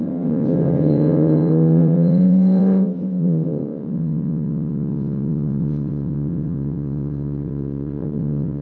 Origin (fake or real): fake